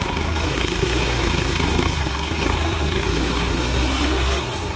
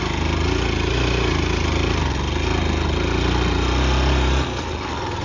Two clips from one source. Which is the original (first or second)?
second